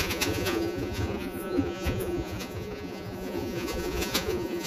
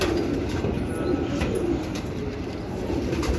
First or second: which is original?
second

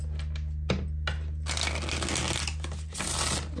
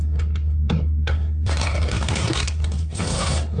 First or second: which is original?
first